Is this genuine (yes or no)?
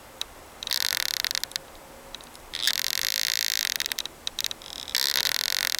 yes